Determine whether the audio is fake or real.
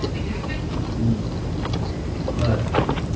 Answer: real